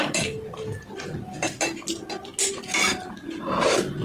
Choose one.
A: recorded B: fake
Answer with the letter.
A